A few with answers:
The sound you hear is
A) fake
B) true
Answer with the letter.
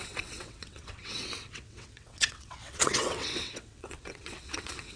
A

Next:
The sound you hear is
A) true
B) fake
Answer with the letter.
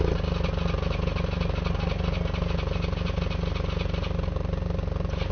A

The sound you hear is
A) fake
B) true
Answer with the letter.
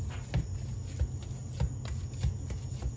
B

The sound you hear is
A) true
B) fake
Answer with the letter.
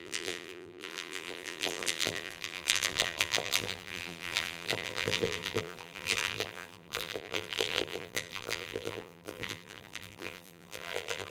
B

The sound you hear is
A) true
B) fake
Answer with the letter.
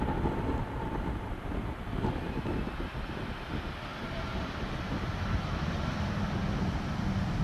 A